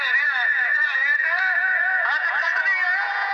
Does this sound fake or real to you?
fake